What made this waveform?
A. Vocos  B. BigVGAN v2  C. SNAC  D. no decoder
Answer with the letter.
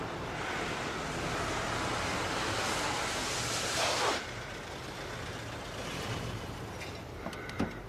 D